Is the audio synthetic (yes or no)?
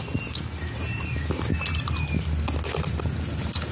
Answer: no